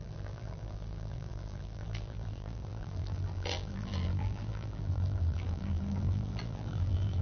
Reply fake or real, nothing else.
fake